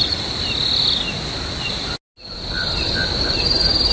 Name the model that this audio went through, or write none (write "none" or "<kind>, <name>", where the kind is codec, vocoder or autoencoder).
none